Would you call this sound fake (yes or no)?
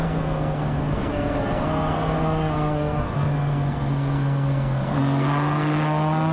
yes